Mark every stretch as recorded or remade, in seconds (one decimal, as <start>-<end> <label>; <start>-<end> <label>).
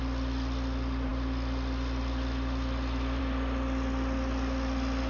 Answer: 0.0-5.1 recorded